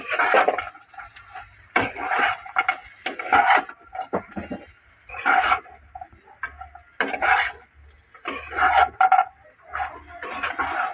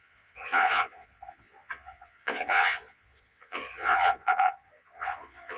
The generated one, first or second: second